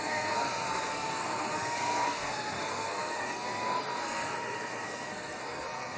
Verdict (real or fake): fake